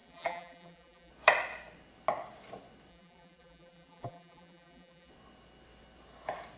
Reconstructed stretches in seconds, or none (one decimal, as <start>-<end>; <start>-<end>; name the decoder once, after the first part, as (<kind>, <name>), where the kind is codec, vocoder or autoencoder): 0.0-1.1 (vocoder, BigVGAN v2); 2.9-5.1